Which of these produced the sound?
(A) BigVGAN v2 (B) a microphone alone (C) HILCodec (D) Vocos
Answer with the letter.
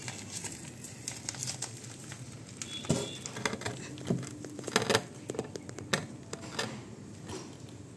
B